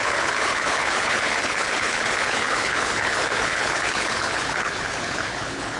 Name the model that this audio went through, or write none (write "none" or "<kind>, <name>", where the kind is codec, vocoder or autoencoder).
codec, HILCodec